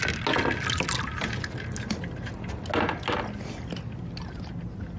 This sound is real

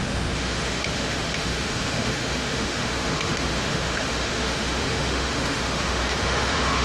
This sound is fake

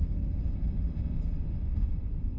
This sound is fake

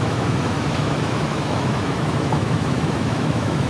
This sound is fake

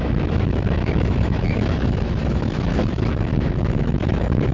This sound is fake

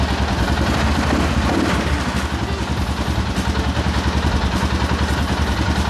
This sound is real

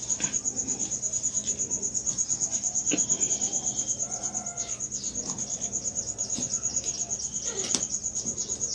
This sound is real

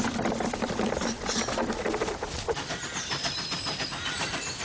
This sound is real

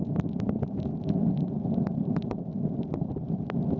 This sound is real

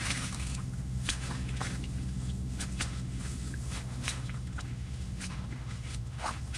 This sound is fake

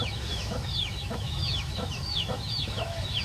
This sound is fake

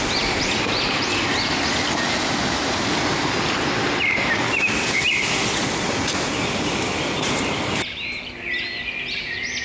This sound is real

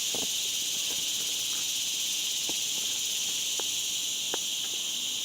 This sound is real